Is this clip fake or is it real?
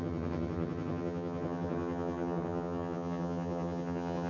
fake